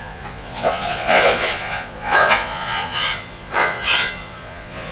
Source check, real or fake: fake